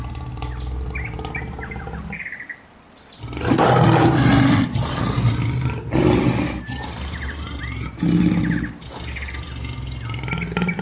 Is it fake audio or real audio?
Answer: real